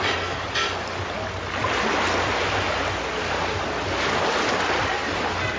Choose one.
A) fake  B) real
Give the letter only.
B